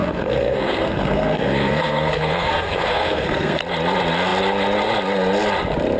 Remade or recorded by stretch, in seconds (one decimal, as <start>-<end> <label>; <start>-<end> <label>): 0.0-3.6 remade; 3.6-6.0 recorded

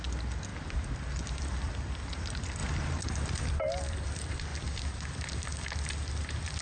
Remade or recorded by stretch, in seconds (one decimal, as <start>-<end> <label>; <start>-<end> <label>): 0.0-6.6 recorded